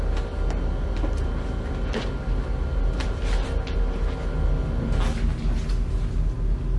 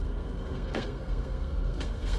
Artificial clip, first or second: second